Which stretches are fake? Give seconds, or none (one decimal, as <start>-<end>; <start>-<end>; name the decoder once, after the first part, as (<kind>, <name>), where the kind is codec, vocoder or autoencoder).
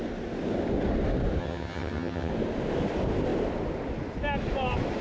1.4-2.3 (vocoder, HiFi-GAN)